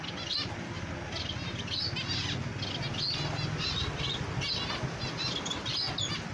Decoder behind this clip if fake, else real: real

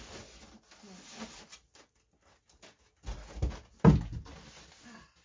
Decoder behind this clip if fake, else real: real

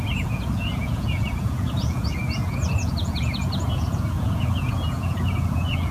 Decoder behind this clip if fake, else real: fake, vocoder, Vocos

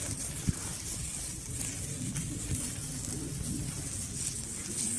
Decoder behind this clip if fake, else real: real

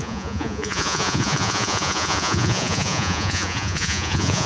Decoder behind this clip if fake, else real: fake, vocoder, Vocos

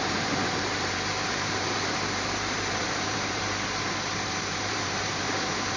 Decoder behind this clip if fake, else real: fake, vocoder, BigVGAN v2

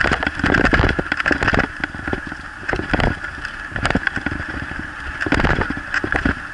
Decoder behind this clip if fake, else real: real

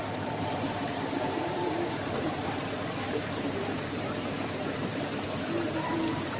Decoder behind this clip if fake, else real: fake, vocoder, BigVGAN v2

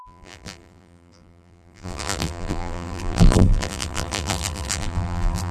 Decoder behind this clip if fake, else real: fake, vocoder, BigVGAN v2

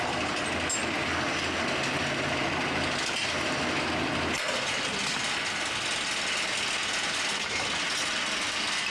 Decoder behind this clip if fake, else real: real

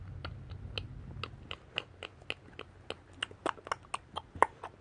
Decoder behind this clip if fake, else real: real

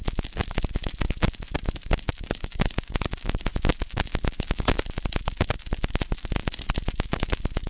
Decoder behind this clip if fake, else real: real